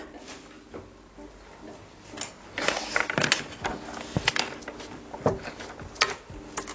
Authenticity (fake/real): real